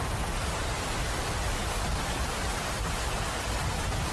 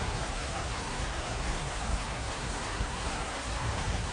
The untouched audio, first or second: first